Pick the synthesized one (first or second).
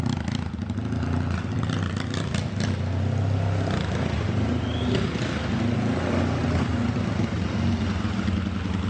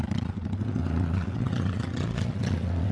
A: second